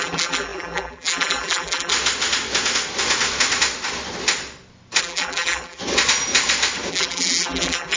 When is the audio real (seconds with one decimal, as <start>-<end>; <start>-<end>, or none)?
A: 1.9-5.0; 5.8-6.9